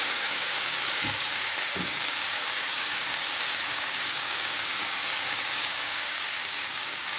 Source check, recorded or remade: remade